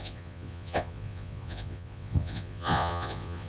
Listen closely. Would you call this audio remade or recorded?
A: remade